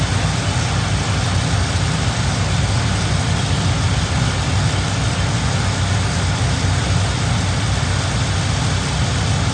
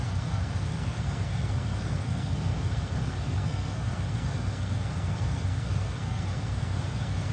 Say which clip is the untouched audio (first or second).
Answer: first